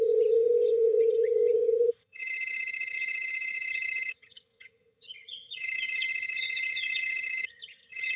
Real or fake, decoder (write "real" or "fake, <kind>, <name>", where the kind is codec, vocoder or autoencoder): fake, vocoder, HiFi-GAN